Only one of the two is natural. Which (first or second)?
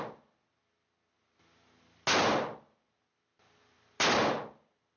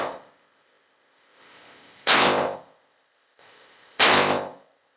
first